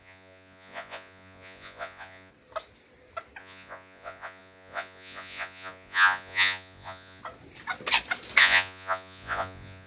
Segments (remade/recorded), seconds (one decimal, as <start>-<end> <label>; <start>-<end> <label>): 0.0-2.3 remade; 2.3-3.4 recorded; 3.4-7.2 remade; 7.2-8.4 recorded; 8.4-9.9 remade